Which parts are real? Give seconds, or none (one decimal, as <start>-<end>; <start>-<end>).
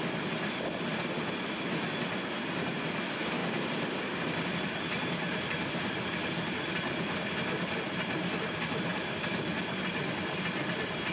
0.0-11.1